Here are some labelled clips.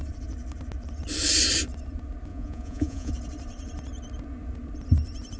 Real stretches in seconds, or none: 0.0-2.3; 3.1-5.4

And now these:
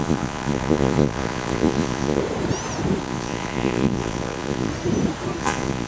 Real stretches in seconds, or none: 2.2-3.0; 4.7-5.4